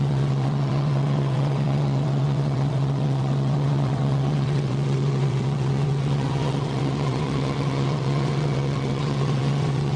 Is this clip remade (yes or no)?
yes